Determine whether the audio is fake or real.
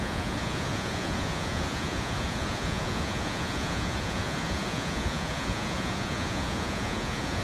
fake